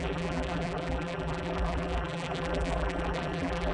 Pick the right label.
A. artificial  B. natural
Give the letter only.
A